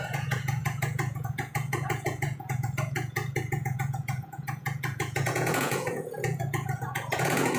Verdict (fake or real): fake